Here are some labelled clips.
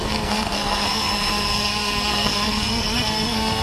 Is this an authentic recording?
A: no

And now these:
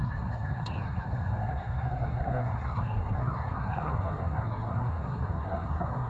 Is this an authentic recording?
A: no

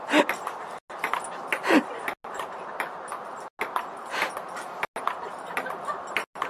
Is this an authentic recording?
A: yes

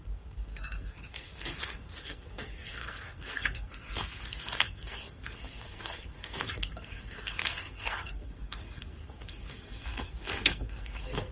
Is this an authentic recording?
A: no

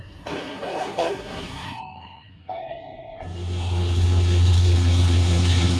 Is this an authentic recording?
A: no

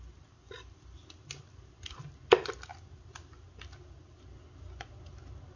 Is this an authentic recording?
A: yes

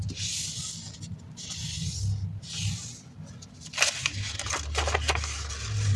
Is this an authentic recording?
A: yes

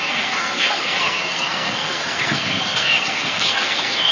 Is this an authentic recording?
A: no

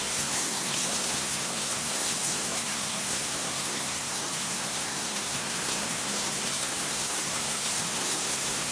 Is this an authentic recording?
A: no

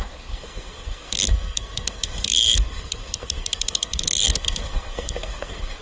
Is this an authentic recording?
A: no